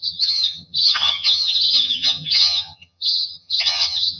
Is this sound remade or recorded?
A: remade